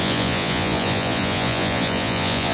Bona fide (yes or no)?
no